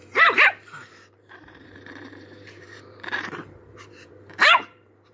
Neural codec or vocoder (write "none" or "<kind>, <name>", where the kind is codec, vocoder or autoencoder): vocoder, BigVGAN v2